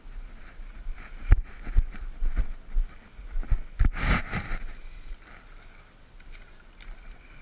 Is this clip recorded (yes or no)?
yes